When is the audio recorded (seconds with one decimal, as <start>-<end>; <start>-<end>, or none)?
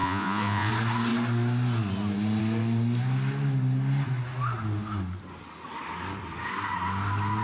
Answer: 0.7-7.4